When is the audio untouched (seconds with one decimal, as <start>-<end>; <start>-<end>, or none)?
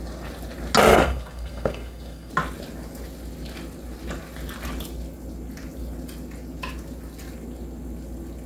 0.0-0.9; 2.3-8.5